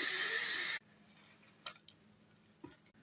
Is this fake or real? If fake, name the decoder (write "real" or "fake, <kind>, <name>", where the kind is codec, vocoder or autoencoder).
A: real